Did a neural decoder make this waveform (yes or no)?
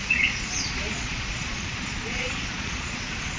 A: yes